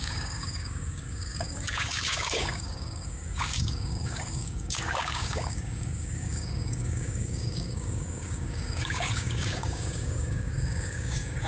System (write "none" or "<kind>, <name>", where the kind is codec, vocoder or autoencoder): codec, DAC